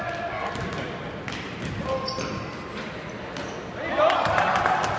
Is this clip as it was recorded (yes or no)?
yes